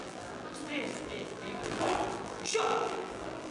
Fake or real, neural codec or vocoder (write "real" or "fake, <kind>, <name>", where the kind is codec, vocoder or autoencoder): fake, vocoder, BigVGAN v2